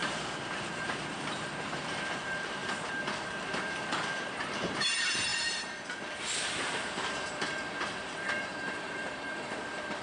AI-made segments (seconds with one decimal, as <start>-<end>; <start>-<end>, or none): 0.0-10.0